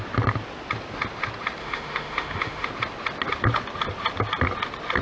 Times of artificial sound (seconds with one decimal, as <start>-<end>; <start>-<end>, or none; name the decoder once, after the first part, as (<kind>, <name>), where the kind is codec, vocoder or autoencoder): 1.6-2.7 (autoencoder, DAC-VAE)